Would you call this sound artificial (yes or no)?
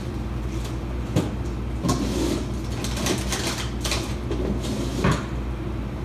no